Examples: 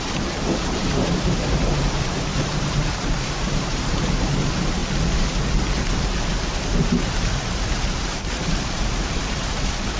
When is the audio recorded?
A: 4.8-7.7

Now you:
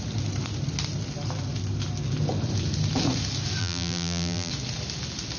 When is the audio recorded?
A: 0.0-3.6; 4.5-5.4

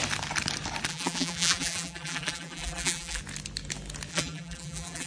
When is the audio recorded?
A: 0.0-0.9; 3.2-4.1

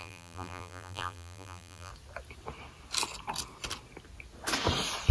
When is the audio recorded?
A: 1.9-5.1

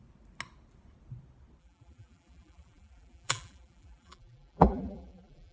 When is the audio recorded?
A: 0.0-1.6